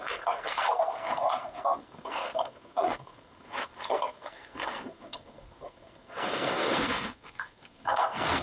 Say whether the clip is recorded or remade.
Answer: remade